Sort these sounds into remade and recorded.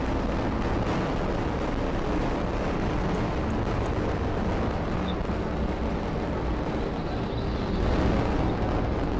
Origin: recorded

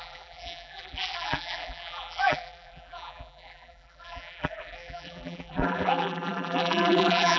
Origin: remade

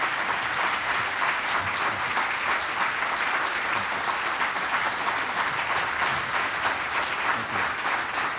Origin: recorded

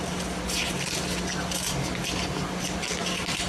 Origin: recorded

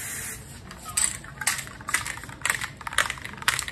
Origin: recorded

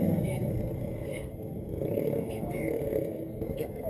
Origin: remade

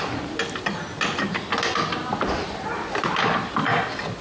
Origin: recorded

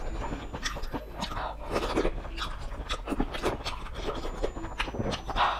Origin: recorded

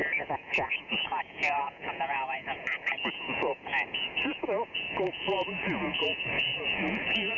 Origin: remade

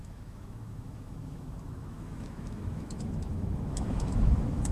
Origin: remade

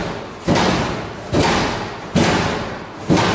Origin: recorded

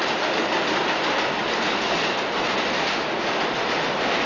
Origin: recorded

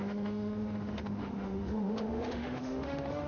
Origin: remade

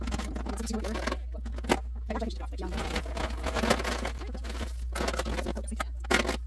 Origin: recorded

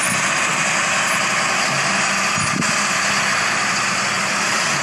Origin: recorded